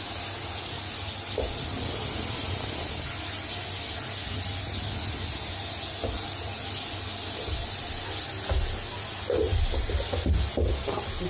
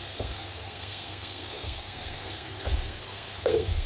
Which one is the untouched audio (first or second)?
first